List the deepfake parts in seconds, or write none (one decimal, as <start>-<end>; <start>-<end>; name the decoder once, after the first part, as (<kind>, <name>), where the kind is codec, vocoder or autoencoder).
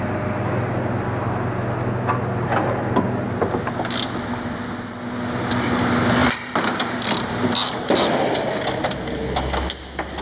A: 6.2-8.8 (vocoder, BigVGAN v2)